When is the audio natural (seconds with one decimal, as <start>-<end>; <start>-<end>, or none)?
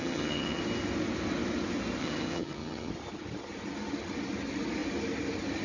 0.6-2.0; 2.9-5.6